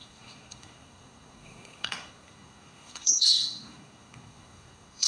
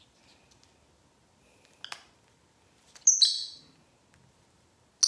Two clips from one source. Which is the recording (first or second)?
second